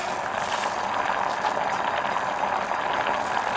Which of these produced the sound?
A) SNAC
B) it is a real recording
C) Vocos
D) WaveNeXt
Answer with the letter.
B